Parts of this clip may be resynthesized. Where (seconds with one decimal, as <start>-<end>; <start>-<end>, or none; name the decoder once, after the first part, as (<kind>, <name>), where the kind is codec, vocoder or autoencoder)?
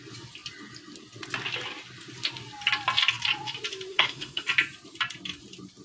3.9-4.5 (codec, SNAC)